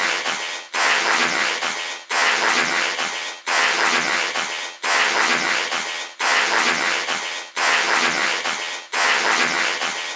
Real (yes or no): no